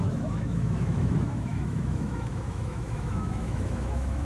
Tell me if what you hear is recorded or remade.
remade